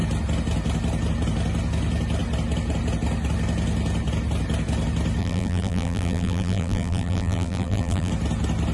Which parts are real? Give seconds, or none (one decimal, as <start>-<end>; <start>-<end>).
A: 0.0-5.2; 8.1-8.7